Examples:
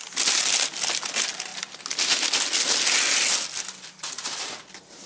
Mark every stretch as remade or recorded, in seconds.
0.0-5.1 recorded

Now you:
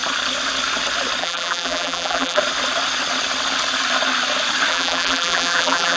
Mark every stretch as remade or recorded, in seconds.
0.0-1.2 recorded; 1.2-2.4 remade; 2.4-4.7 recorded; 4.7-6.0 remade